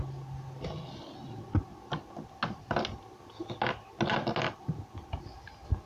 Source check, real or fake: real